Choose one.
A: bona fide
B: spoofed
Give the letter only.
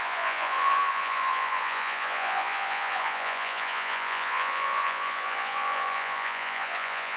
B